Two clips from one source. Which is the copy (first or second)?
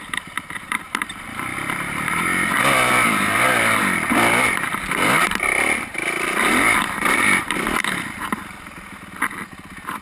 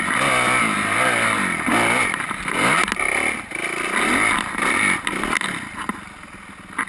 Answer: first